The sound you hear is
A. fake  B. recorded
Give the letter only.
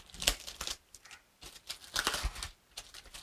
B